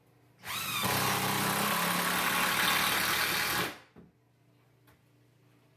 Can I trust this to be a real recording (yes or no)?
yes